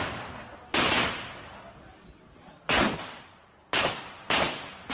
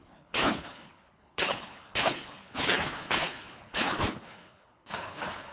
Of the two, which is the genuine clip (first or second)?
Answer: first